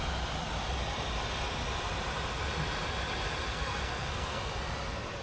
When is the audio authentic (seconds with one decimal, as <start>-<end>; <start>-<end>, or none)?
0.0-3.5; 4.5-5.2